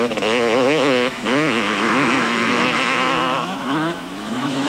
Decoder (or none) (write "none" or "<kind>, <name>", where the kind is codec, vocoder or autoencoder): autoencoder, DAC-VAE